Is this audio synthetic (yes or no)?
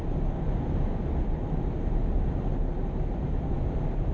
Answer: no